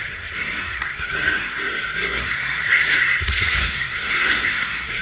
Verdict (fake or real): fake